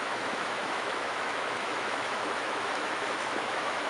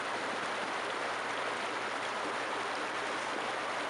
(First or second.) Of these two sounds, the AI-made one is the first